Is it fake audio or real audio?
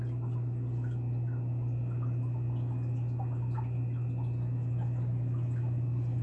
real